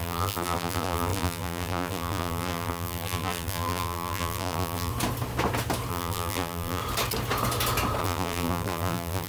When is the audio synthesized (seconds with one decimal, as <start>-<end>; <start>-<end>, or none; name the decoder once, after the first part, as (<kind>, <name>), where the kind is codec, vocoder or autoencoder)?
0.0-4.9 (vocoder, BigVGAN v2); 5.9-6.8; 8.0-9.3